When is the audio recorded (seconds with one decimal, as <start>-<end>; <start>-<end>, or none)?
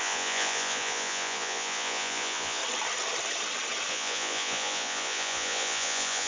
2.6-3.9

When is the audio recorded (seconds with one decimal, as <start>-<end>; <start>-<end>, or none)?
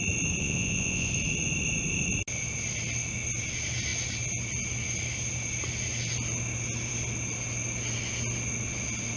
0.0-0.4; 1.1-9.2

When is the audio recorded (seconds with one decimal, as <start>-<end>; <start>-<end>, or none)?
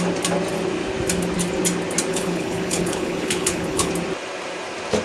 0.0-2.1; 3.9-5.0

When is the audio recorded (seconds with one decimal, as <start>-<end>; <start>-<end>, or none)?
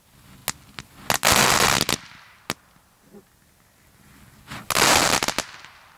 0.0-6.0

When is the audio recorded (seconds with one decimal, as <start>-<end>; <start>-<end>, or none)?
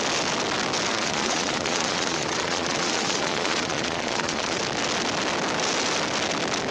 0.0-0.9; 4.6-6.7